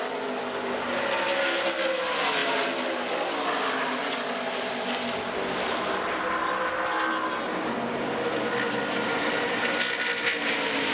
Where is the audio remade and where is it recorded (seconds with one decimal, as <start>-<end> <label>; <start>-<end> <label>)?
0.0-10.9 recorded